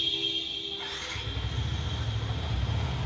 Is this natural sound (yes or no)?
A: yes